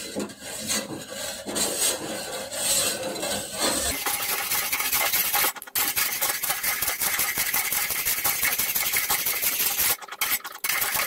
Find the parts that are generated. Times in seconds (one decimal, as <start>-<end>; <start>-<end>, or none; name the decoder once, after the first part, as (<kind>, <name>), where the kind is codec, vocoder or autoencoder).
none